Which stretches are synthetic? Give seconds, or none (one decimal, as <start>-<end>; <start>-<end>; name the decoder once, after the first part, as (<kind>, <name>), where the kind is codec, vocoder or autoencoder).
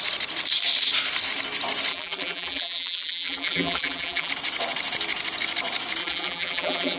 1.9-4.3 (vocoder, BigVGAN v2); 6.0-7.0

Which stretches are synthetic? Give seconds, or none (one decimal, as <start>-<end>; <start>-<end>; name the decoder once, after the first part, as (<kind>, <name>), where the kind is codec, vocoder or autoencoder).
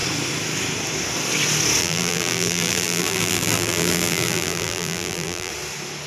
1.8-5.5 (vocoder, BigVGAN v2)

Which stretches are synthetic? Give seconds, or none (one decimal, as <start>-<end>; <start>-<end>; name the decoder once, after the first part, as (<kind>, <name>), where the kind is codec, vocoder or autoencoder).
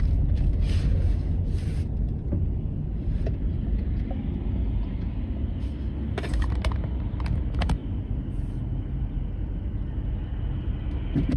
none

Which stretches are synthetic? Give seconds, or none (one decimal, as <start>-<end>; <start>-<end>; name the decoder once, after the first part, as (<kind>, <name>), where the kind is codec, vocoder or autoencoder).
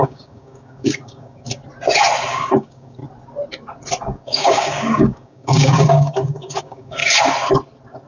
0.0-1.6 (codec, DAC); 2.3-3.0; 4.0-7.0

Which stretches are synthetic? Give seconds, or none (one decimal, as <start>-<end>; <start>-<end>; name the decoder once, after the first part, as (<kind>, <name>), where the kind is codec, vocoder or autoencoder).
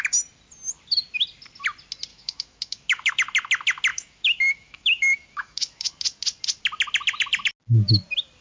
2.1-3.1 (autoencoder, DAC-VAE); 3.9-5.9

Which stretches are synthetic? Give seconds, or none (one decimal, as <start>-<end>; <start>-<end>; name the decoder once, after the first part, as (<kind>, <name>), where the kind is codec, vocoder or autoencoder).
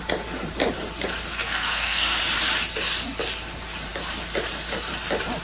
1.3-2.2 (codec, SNAC)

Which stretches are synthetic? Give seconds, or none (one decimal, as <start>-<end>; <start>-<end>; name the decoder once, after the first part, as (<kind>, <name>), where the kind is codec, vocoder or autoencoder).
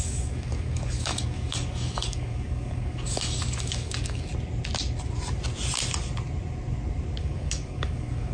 0.0-4.3 (codec, DAC); 7.2-8.3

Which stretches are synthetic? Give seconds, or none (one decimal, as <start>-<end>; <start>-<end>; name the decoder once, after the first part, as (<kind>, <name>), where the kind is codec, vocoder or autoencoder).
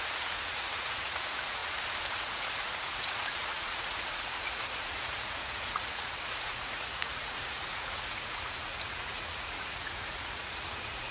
0.0-1.6 (vocoder, Vocos); 2.1-11.1